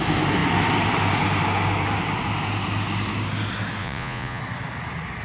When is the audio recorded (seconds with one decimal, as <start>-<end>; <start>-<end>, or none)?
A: 0.0-3.8; 4.4-5.2